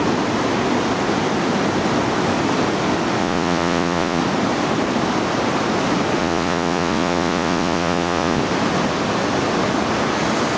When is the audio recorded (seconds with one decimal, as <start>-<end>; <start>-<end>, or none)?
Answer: 0.0-3.2; 4.2-6.2; 8.4-10.6